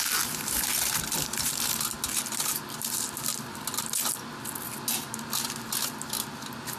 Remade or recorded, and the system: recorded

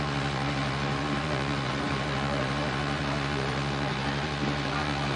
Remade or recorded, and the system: remade, vocoder, Vocos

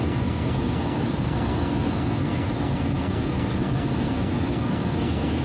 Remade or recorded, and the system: remade, codec, SNAC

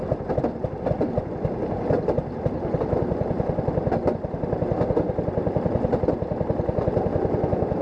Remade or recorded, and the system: recorded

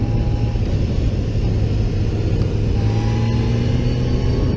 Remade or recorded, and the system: recorded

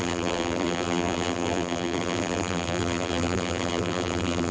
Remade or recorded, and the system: remade, vocoder, BigVGAN v2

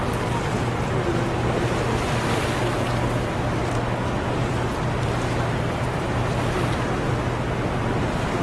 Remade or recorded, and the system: recorded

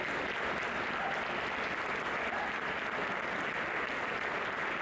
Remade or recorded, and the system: recorded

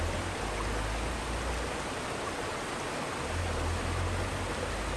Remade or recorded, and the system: recorded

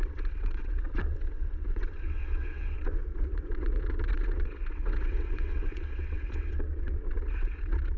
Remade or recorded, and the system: remade, vocoder, WaveNeXt